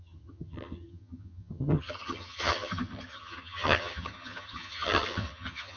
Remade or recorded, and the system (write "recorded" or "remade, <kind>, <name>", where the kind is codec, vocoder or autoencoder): remade, vocoder, HiFi-GAN